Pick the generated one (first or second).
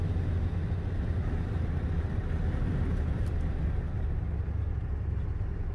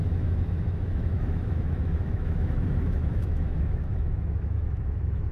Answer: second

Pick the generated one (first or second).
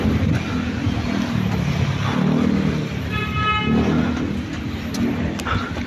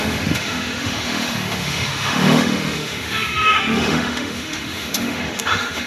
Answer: second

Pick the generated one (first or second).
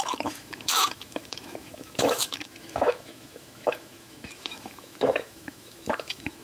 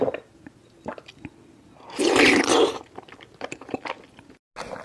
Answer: first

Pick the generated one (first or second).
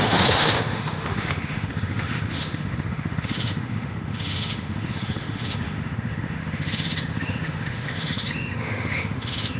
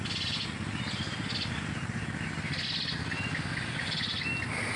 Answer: first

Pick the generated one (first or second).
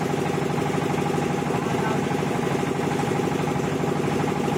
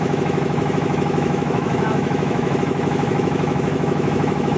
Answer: second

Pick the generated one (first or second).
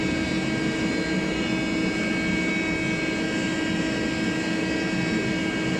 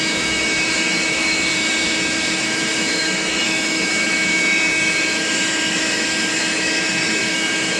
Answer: second